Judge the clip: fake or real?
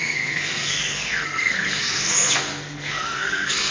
fake